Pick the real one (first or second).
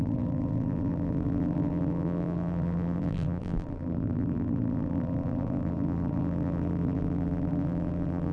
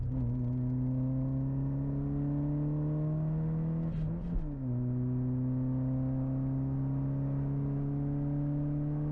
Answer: second